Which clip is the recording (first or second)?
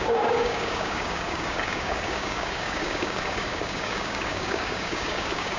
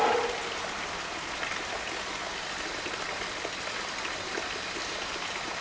second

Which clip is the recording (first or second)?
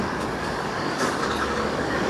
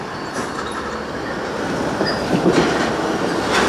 second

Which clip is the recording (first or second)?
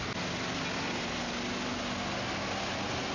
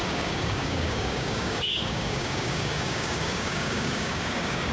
first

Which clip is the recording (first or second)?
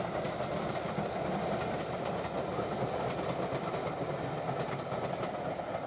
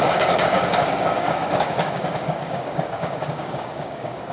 first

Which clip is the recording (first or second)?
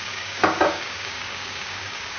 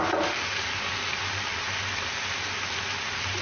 second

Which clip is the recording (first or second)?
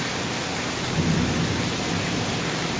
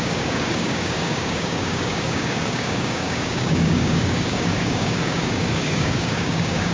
first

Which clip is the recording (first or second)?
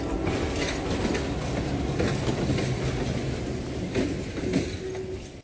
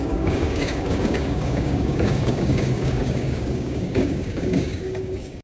first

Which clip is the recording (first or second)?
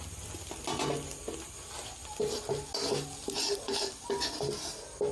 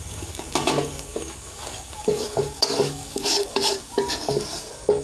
first